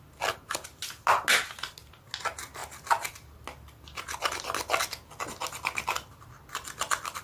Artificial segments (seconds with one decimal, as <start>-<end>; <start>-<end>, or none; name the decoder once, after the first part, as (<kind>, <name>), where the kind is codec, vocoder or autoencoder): none